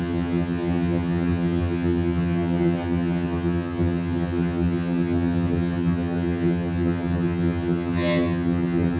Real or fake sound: fake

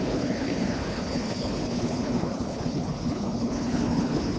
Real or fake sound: fake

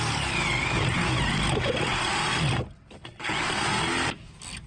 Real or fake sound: real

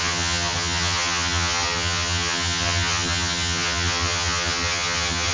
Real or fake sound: fake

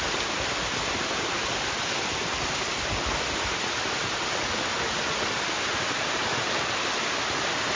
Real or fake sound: real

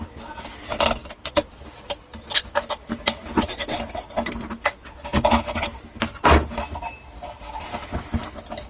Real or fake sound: real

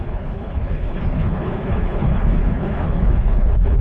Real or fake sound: fake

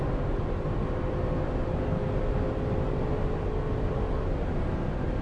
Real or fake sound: real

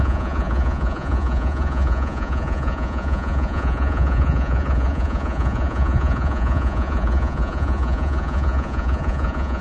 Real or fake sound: fake